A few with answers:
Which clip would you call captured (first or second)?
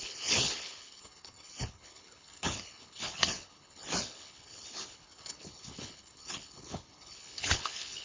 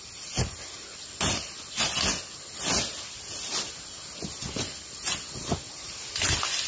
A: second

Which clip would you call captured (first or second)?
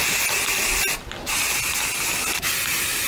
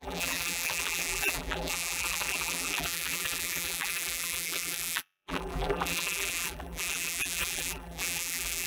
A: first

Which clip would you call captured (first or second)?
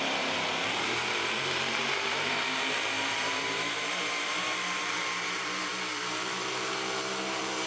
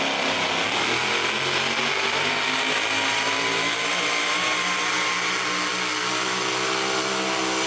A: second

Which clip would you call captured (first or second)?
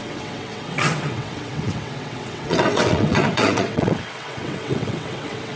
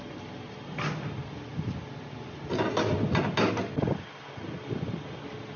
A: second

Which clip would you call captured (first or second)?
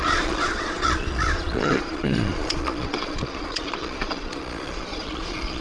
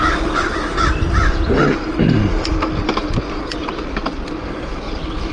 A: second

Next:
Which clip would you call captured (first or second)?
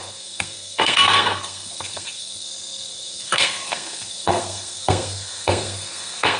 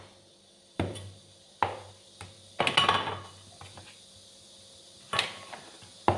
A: second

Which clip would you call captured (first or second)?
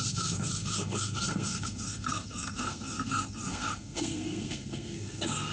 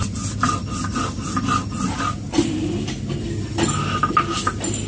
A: second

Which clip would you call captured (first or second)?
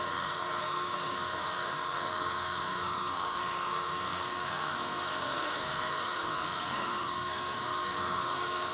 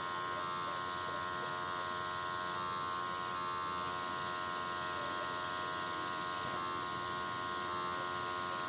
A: second